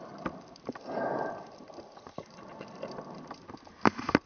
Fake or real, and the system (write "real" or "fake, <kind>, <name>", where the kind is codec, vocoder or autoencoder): real